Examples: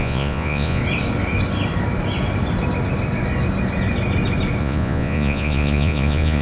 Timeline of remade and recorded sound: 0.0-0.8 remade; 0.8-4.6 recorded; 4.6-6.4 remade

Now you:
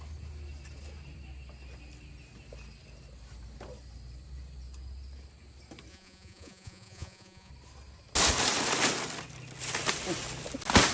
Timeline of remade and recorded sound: 0.0-5.9 recorded; 5.9-7.5 remade; 7.5-10.9 recorded